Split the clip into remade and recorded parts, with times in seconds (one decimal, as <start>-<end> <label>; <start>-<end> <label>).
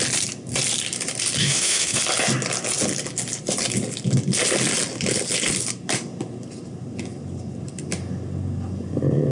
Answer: 0.0-1.4 recorded; 1.4-2.0 remade; 2.0-9.3 recorded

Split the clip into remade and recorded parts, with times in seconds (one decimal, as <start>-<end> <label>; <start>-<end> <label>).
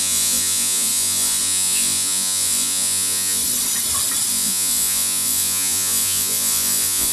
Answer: 0.0-3.4 remade; 3.4-4.3 recorded; 4.3-7.1 remade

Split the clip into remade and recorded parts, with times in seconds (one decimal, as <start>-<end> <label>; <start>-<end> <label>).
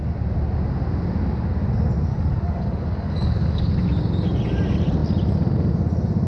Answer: 0.0-2.1 recorded; 2.1-3.7 remade; 3.7-6.3 recorded